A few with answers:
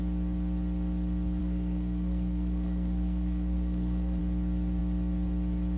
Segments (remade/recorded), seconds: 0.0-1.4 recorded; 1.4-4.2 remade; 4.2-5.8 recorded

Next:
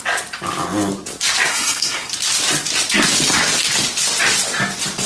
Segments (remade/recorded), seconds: 0.0-1.5 recorded; 1.5-2.1 remade; 2.1-5.1 recorded

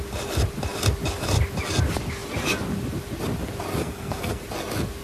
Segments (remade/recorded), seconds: 0.0-3.8 recorded; 3.8-4.4 remade; 4.4-5.0 recorded

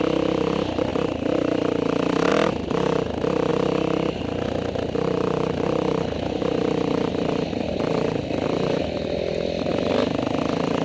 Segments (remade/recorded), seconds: 0.0-10.8 recorded

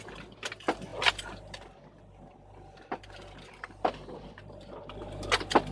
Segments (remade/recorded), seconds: 0.0-5.7 recorded